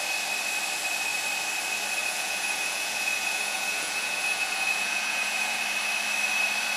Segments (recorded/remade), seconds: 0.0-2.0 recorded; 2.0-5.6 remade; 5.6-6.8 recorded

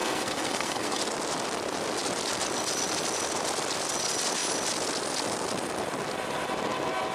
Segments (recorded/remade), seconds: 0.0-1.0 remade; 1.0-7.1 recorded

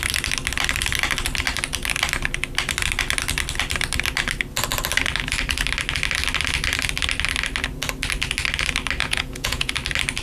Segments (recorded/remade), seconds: 0.0-9.0 recorded; 9.0-9.7 remade; 9.7-10.2 recorded

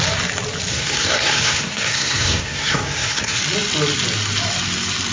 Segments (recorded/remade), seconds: 0.0-0.7 recorded; 0.7-3.4 remade; 3.4-5.1 recorded

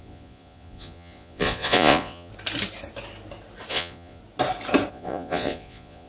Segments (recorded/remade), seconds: 0.0-2.3 remade; 2.3-3.7 recorded; 3.7-4.2 remade; 4.2-4.9 recorded; 4.9-6.1 remade

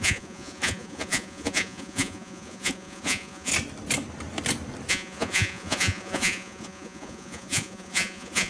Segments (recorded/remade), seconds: 0.0-3.5 remade; 3.5-4.9 recorded; 4.9-8.5 remade

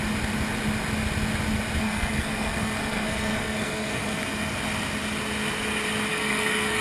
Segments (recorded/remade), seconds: 0.0-1.8 recorded; 1.8-4.2 remade; 4.2-6.1 recorded; 6.1-6.8 remade

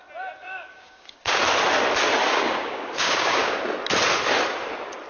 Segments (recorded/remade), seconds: 0.0-0.4 recorded; 0.4-1.4 remade; 1.4-2.3 recorded; 2.3-3.6 remade; 3.6-5.1 recorded